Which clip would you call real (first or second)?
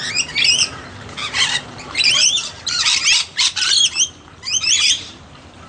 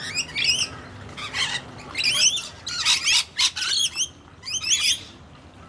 second